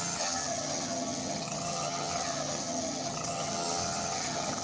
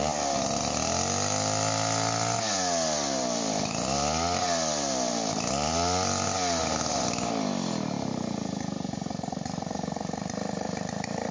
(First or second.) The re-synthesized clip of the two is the first